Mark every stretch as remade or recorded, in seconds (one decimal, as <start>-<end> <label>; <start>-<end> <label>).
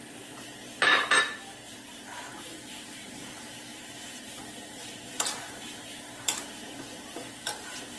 0.0-8.0 remade